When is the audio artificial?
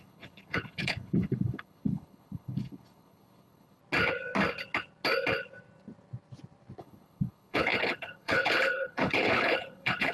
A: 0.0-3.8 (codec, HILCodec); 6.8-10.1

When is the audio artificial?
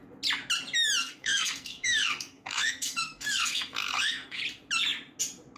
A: 1.0-4.4 (codec, SNAC)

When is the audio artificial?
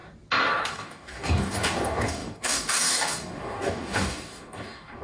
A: 0.7-5.0 (codec, DAC)